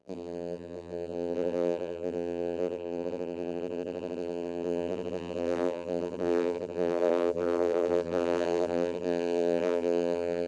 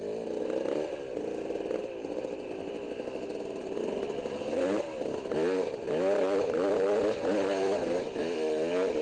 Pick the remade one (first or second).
first